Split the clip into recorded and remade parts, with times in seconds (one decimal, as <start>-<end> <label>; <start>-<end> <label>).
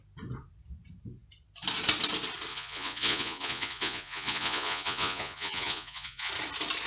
0.0-2.5 recorded; 2.5-6.3 remade; 6.3-6.9 recorded